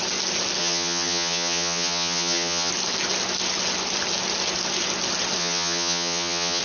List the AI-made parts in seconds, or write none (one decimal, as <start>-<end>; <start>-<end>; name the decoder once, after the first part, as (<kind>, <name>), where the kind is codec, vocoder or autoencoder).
0.6-2.7 (vocoder, HiFi-GAN); 5.4-6.6